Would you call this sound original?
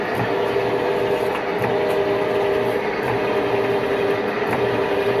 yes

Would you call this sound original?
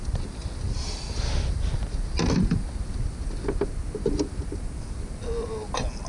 yes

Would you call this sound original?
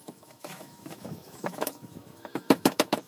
no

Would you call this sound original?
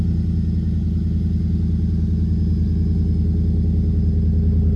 yes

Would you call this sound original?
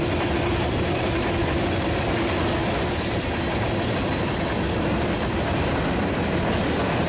yes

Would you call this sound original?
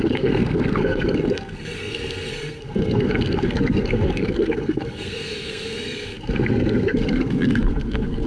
no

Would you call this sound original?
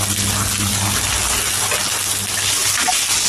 yes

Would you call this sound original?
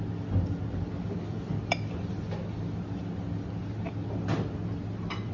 yes